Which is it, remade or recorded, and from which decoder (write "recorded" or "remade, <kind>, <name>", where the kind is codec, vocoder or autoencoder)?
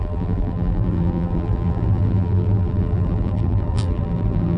remade, vocoder, BigVGAN v2